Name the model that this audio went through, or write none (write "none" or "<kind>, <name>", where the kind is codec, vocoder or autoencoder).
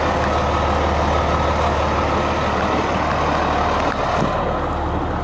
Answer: none